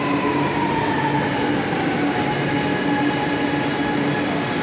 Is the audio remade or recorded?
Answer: recorded